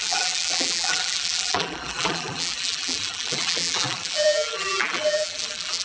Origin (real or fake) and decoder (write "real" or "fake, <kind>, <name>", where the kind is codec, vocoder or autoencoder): fake, vocoder, BigVGAN v2